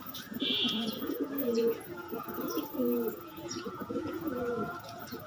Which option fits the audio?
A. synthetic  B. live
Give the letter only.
A